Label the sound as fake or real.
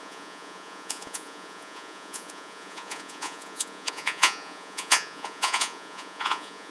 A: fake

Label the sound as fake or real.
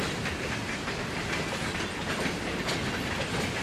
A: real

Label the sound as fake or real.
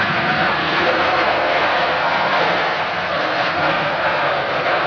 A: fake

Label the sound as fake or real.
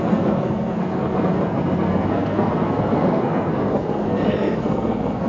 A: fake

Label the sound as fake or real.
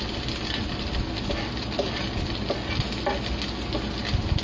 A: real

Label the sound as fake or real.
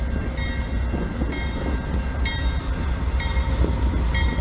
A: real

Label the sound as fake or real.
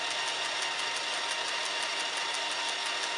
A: real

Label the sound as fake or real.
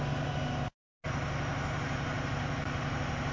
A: real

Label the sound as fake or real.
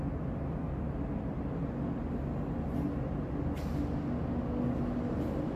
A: real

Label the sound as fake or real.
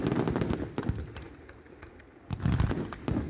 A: real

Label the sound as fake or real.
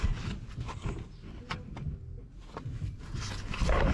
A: real